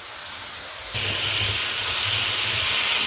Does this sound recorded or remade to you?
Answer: recorded